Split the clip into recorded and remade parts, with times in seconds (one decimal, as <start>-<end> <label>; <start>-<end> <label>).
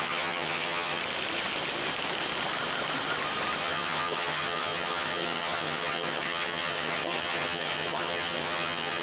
0.0-1.0 remade; 1.0-3.6 recorded; 3.6-9.0 remade